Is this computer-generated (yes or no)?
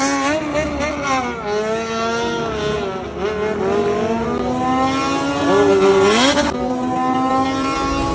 no